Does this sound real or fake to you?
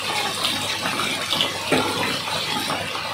real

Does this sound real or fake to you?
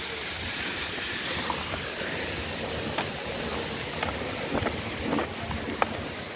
real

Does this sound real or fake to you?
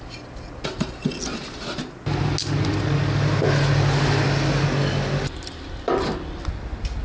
real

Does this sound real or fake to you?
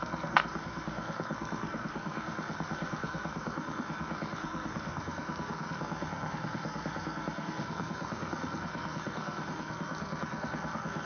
fake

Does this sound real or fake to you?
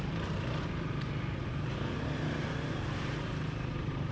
fake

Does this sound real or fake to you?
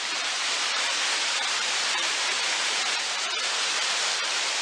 fake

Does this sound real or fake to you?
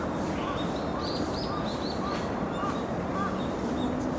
real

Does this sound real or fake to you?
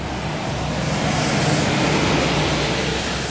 real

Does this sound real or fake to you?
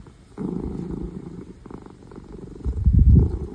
real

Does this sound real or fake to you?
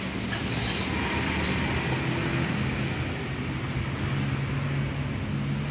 real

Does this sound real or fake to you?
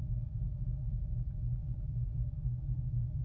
fake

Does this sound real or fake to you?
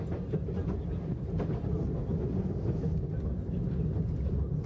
real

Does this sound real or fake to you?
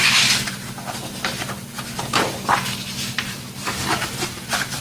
fake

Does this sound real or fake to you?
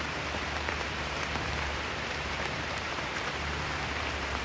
fake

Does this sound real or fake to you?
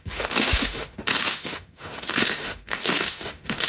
fake